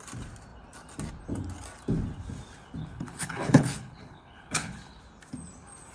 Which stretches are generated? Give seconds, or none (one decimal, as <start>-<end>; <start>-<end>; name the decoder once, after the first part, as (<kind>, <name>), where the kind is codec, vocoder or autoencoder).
2.8-5.0 (codec, HILCodec)